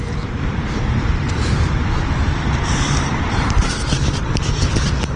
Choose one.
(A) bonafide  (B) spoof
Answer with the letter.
B